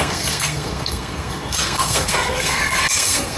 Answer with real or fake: fake